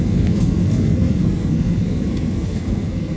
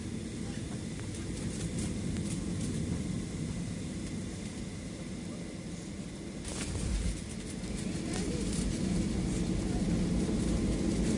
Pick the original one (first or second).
second